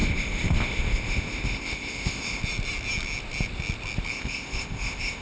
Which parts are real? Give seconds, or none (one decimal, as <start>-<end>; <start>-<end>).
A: 2.4-4.1